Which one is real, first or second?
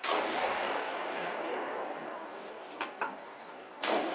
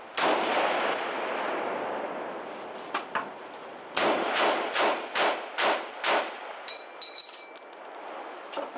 second